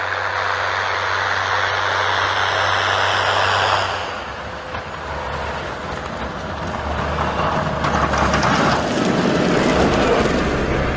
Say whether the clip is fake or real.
real